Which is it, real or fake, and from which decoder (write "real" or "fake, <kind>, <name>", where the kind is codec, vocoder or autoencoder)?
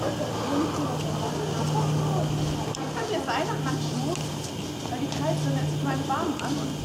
real